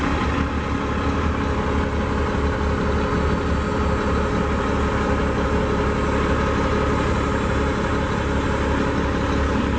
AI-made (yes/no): no